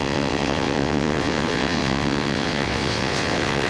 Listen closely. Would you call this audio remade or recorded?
remade